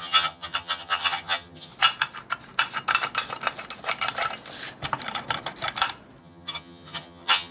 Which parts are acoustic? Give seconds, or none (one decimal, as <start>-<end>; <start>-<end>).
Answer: 1.7-6.2